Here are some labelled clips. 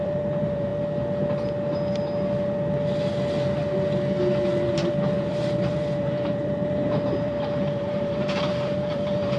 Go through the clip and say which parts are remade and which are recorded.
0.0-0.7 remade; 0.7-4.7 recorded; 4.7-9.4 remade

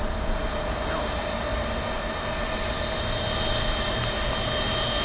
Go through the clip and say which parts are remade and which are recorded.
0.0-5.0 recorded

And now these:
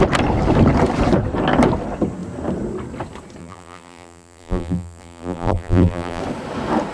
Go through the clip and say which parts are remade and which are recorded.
0.0-3.4 recorded; 3.4-6.2 remade; 6.2-6.9 recorded

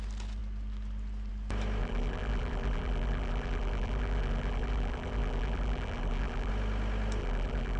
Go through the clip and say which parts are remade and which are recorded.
0.0-1.8 recorded; 1.8-6.5 remade; 6.5-7.2 recorded; 7.2-7.8 remade

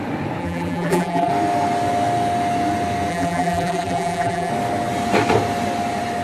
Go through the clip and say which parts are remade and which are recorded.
0.0-0.4 recorded; 0.4-1.3 remade; 1.3-3.1 recorded; 3.1-4.5 remade; 4.5-6.2 recorded

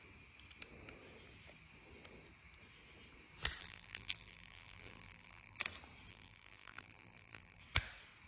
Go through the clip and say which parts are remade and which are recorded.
0.0-3.6 recorded; 3.6-5.6 remade; 5.6-6.1 recorded; 6.1-7.6 remade; 7.6-8.3 recorded